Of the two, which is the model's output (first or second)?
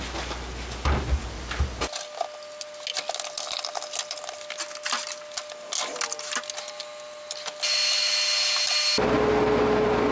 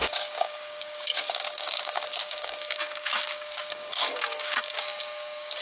second